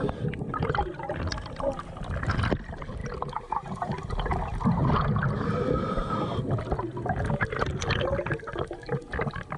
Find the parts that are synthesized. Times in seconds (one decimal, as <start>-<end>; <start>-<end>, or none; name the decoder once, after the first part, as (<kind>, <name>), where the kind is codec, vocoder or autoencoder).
none